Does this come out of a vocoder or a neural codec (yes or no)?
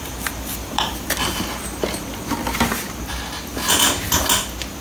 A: no